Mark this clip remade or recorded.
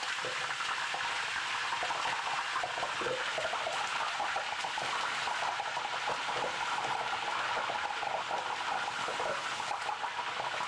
recorded